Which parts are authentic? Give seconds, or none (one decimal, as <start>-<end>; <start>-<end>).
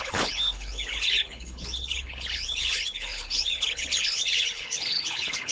none